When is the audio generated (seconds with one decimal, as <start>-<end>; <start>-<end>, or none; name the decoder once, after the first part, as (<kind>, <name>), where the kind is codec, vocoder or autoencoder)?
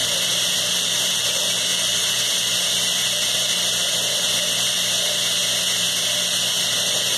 0.0-0.8 (vocoder, BigVGAN v2)